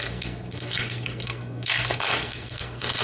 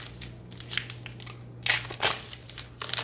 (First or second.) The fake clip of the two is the first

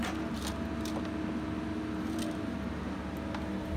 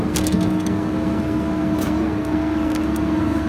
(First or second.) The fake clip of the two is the second